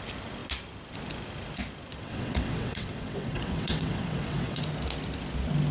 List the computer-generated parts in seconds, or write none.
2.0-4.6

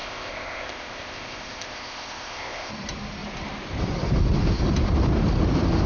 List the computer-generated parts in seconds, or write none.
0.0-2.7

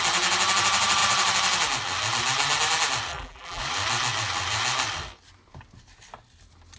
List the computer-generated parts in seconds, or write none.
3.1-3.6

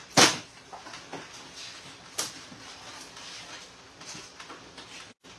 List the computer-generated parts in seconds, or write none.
none

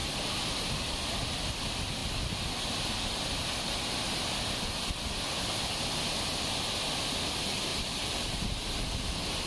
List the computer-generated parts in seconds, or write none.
7.7-8.3